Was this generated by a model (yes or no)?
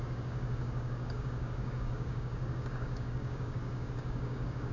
yes